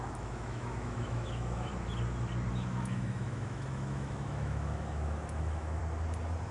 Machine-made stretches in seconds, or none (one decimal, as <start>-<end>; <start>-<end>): 0.0-1.7; 2.5-5.8